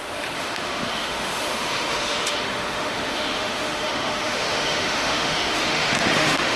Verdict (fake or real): fake